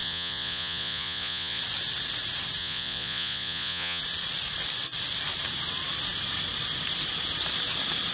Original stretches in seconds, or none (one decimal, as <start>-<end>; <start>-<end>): 1.6-2.6; 4.0-8.1

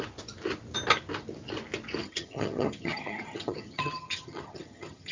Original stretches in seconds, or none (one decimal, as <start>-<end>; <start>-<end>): 0.0-2.0

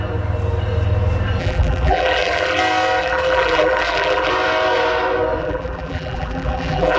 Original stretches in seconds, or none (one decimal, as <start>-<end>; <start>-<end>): 0.0-1.4; 2.6-3.0; 4.3-5.4